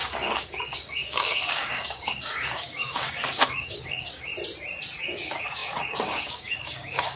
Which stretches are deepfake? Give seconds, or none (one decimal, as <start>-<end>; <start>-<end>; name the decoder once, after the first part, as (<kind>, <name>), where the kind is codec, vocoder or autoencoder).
0.0-4.3 (codec, DAC); 5.0-7.2